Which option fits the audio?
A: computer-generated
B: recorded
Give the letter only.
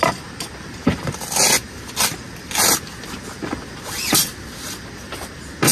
B